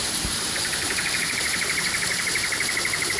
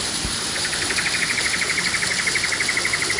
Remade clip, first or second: first